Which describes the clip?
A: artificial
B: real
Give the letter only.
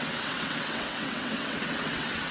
A